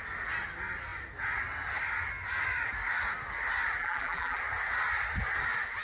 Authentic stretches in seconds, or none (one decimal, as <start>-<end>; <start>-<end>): 0.0-3.8; 4.4-5.8